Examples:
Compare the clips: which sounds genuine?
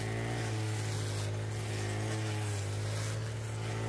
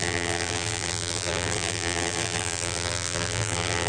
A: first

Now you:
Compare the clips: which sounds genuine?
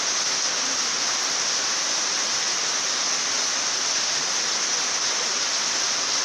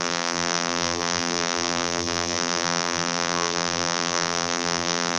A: first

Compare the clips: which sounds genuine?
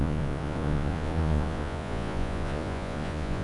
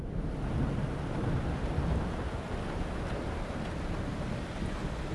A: second